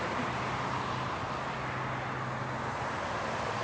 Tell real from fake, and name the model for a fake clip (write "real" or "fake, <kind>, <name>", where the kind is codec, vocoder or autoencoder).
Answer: real